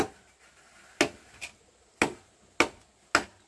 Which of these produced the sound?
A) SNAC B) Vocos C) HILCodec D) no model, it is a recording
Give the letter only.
D